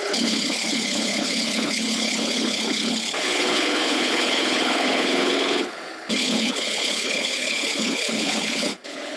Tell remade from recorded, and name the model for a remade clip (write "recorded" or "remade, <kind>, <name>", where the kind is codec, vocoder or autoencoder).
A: remade, codec, HILCodec